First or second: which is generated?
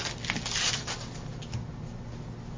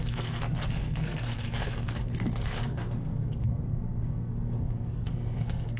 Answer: second